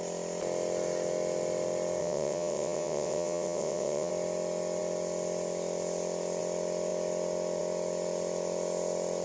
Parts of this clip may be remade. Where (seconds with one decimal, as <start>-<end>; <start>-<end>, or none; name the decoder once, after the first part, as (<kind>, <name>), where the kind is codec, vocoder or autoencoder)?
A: 2.0-4.1 (vocoder, WaveNeXt)